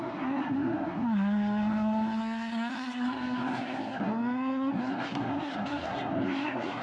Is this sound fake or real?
fake